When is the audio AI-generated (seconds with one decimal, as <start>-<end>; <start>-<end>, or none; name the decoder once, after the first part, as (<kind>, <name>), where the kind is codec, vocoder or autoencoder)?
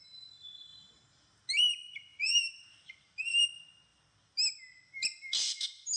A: 2.1-3.3 (vocoder, BigVGAN v2)